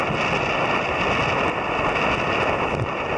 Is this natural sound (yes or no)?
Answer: yes